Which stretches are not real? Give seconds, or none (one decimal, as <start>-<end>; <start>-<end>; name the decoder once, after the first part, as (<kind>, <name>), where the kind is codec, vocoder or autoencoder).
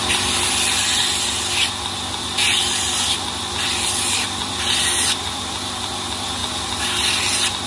none